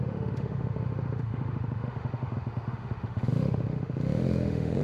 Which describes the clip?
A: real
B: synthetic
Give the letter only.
B